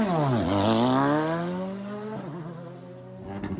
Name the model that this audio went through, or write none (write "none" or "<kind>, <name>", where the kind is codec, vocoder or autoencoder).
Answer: none